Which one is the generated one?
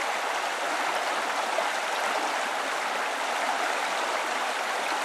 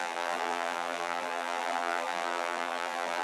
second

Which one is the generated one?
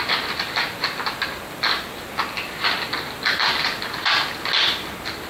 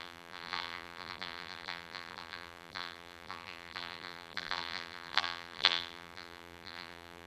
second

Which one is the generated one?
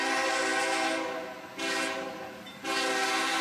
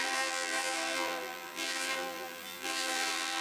second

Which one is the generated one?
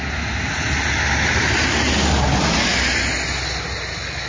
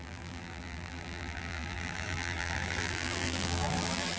second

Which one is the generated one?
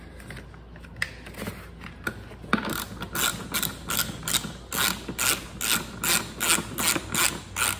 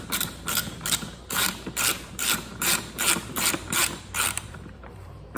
second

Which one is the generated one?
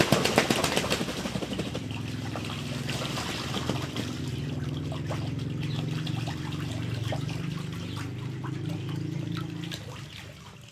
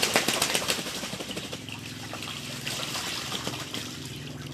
second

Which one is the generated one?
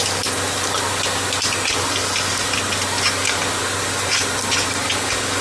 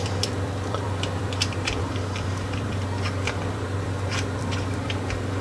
second